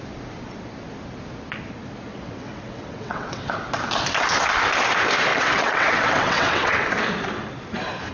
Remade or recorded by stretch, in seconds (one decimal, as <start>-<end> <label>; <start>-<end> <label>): 0.0-2.1 recorded; 2.1-3.6 remade; 3.6-5.3 recorded; 5.3-6.9 remade; 6.9-8.1 recorded